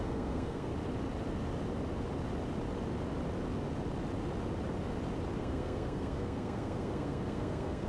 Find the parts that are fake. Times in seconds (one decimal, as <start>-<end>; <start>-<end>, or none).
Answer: 0.0-0.7; 5.4-7.9